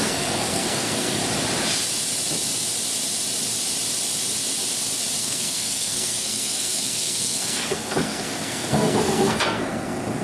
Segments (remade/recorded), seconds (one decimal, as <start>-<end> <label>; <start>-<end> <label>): 0.0-1.2 remade; 1.2-5.2 recorded; 5.2-10.2 remade